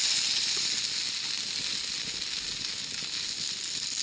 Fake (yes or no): no